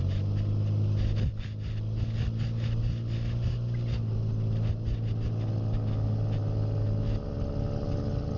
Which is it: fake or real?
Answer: real